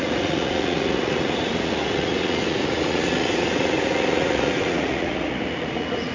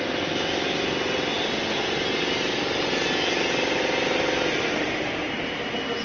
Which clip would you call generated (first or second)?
first